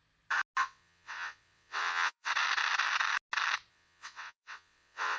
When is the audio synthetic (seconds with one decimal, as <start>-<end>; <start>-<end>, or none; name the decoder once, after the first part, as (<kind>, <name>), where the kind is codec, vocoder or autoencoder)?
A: 0.6-2.3 (vocoder, WaveNeXt); 3.7-5.2